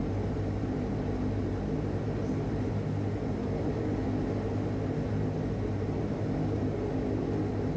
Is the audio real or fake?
real